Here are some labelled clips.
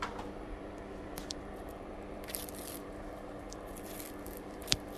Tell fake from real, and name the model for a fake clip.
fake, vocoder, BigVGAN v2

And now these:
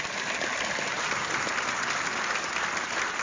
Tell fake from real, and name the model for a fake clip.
real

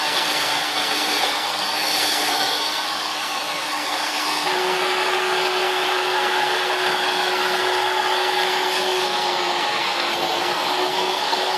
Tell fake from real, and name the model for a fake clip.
fake, codec, SNAC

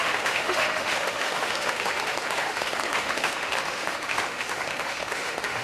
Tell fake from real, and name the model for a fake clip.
fake, autoencoder, DAC-VAE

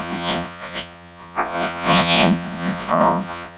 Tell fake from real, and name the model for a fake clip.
fake, vocoder, Vocos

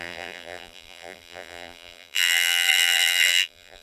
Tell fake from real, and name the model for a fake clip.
fake, vocoder, BigVGAN v2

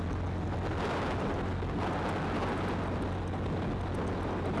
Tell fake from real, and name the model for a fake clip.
real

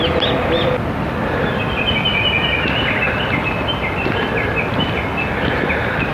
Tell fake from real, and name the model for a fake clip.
real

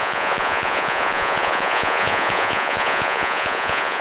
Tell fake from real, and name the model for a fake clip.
fake, vocoder, Vocos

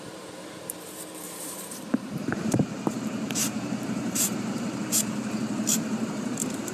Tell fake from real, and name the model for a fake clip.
fake, vocoder, BigVGAN v2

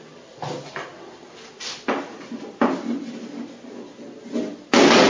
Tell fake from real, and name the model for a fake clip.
real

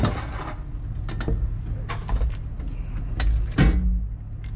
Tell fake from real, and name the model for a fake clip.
real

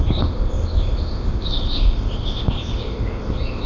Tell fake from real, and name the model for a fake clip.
fake, codec, ZipCodec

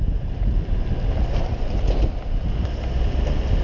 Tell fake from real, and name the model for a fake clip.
real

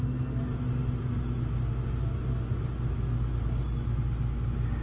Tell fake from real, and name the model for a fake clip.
real